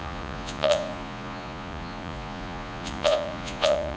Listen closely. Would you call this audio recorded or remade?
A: remade